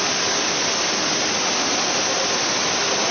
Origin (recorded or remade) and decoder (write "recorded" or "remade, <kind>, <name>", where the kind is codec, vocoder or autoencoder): recorded